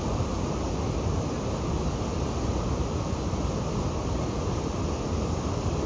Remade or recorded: recorded